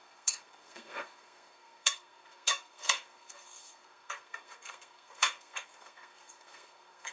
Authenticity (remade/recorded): remade